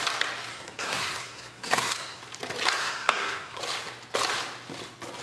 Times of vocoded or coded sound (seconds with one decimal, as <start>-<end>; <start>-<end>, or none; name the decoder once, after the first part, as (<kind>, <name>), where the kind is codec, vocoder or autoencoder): 0.5-2.2 (codec, SNAC); 2.8-3.6